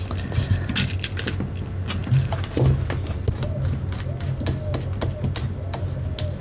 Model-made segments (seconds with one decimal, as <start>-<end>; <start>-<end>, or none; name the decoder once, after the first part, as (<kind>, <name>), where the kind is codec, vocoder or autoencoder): none